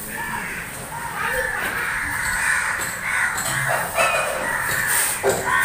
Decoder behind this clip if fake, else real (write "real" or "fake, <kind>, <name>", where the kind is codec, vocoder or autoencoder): real